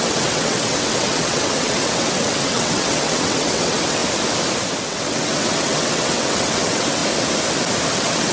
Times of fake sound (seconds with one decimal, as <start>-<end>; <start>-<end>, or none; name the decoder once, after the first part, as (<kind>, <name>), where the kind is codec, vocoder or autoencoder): 0.0-4.0 (vocoder, WaveNeXt); 4.8-7.0; 7.9-8.3